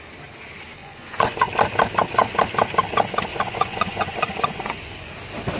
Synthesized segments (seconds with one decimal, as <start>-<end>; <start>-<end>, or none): 0.8-1.5; 3.3-5.1